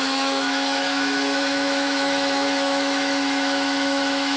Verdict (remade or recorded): remade